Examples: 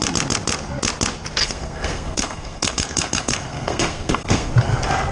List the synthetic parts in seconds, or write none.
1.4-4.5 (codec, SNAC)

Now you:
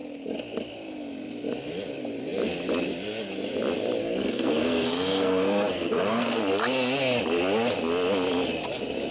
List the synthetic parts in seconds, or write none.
4.0-6.4 (codec, SNAC)